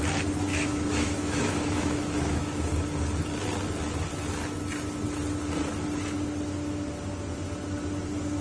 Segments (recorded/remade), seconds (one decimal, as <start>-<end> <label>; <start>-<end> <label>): 0.0-0.5 recorded; 0.5-2.7 remade; 2.7-8.4 recorded